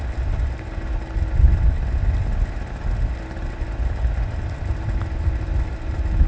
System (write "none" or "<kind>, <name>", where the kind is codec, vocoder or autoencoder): none